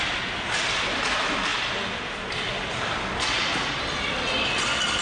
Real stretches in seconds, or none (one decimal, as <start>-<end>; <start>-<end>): 0.0-5.0